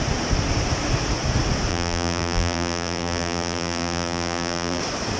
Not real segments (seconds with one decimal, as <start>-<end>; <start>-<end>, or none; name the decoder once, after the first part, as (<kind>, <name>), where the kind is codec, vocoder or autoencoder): 1.7-4.8 (vocoder, BigVGAN v2)